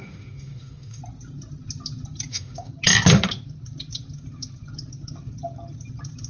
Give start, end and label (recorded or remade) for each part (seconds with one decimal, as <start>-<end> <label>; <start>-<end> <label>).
0.0-1.0 remade; 1.0-2.3 recorded; 2.3-2.7 remade; 2.7-6.3 recorded